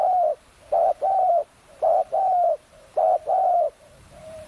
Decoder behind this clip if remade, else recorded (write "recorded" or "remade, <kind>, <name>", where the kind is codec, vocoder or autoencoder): remade, vocoder, BigVGAN v2